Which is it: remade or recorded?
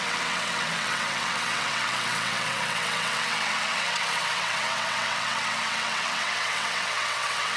remade